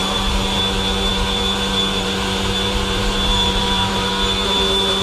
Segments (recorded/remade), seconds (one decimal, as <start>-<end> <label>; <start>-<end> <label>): 0.0-0.6 remade; 0.6-1.1 recorded; 1.1-4.1 remade; 4.1-5.0 recorded